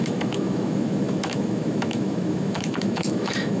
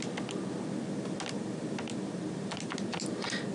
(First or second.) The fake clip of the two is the first